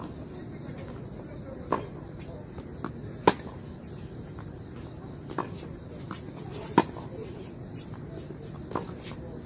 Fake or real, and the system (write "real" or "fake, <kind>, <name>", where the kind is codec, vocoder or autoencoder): real